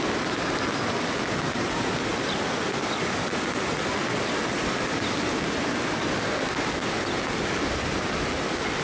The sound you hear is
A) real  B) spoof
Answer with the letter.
A